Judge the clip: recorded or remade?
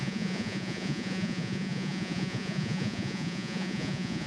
remade